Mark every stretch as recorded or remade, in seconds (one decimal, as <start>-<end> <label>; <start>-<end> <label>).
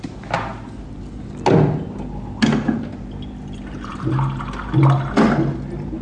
0.0-6.0 recorded